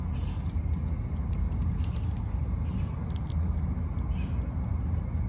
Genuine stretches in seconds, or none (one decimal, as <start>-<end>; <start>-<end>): 0.0-1.6; 2.4-5.3